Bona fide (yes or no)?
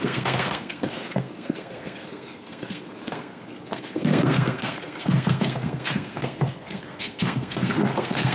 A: no